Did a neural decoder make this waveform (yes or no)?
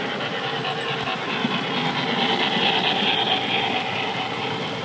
no